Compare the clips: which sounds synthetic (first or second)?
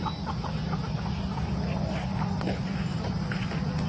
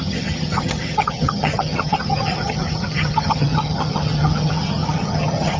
second